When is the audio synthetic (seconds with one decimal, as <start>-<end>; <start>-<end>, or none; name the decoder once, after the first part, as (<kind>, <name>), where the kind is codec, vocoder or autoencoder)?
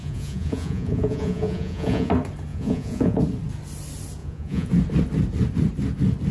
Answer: 0.0-2.1 (vocoder, Vocos); 2.5-3.2; 4.2-4.7